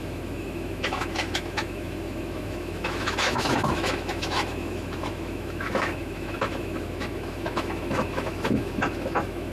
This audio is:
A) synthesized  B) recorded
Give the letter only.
A